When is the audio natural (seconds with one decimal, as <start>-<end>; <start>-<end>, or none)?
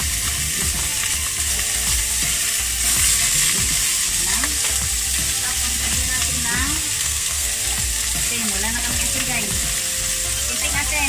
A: 0.0-7.0; 7.5-11.1